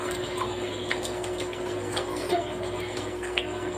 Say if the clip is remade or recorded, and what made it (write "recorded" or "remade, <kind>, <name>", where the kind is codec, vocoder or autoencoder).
remade, codec, SNAC